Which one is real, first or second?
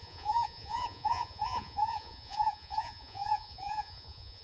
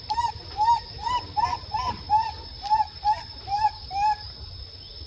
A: second